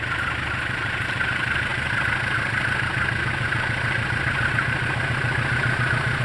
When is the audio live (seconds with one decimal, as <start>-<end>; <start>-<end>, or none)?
0.0-6.2